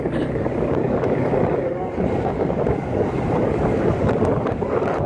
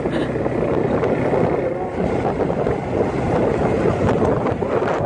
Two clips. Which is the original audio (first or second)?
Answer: second